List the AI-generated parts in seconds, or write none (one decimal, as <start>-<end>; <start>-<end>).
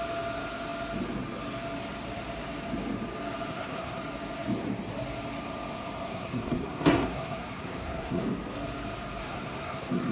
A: 3.5-4.0; 6.1-8.2; 9.2-10.1